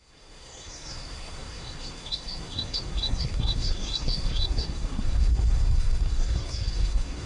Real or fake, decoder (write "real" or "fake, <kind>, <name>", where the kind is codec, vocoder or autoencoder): fake, codec, SNAC